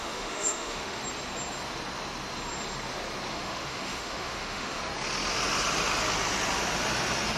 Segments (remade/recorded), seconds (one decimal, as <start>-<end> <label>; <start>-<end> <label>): 0.0-1.0 remade; 1.0-3.3 recorded; 3.3-4.8 remade; 4.8-7.4 recorded